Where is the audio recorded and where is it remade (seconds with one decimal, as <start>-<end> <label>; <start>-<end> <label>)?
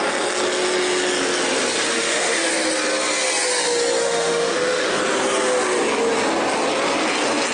0.0-1.9 recorded; 1.9-2.5 remade; 2.5-4.0 recorded; 4.0-5.0 remade; 5.0-7.5 recorded